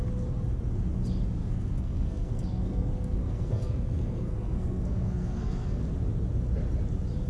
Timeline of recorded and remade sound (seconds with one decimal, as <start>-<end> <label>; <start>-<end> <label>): 0.0-1.4 recorded; 1.4-5.8 remade; 5.8-7.3 recorded

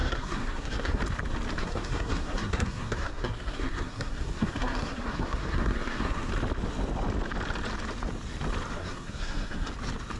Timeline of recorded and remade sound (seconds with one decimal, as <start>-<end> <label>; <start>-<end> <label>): 0.0-1.0 remade; 1.0-1.6 recorded; 1.6-6.3 remade; 6.3-8.8 recorded; 8.8-9.7 remade; 9.7-10.2 recorded